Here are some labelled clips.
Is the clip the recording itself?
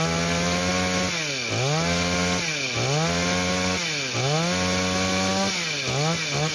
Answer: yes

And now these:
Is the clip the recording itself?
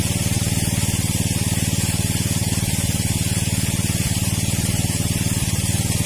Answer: yes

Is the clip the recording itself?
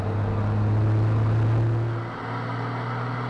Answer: yes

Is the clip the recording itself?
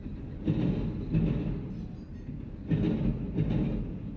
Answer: yes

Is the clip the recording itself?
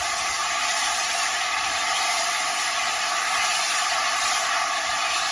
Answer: yes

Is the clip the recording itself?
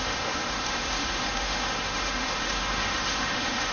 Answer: no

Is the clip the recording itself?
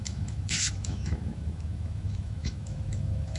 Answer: no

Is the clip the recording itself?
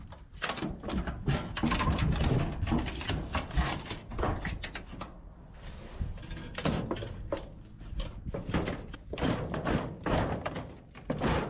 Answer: yes